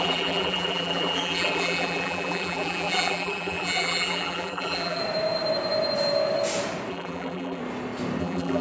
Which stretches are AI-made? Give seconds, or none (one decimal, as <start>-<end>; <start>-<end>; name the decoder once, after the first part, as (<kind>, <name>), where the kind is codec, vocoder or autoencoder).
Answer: 0.0-5.0 (vocoder, BigVGAN v2); 6.9-7.6; 8.2-8.6